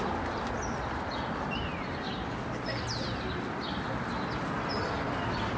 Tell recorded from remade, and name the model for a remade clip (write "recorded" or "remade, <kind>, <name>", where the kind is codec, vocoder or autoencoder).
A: recorded